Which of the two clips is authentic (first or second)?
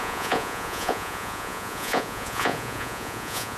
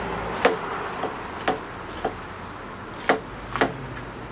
second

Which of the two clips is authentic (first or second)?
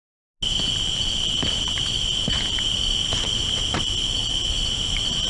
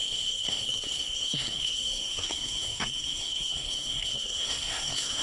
first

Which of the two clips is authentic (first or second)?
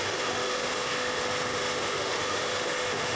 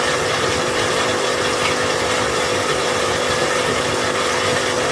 second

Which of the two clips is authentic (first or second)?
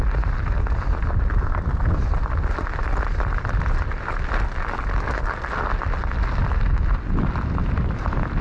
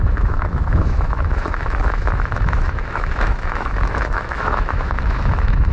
first